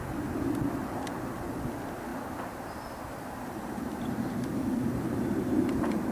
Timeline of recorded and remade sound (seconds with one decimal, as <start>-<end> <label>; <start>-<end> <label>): 0.0-2.1 recorded; 2.1-6.1 remade